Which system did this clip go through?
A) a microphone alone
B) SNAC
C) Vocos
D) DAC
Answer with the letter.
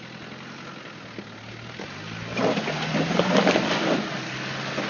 A